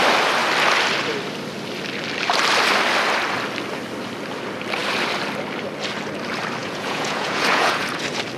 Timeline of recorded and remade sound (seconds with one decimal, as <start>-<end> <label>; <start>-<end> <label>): 0.0-6.6 recorded; 6.6-8.0 remade; 8.0-8.4 recorded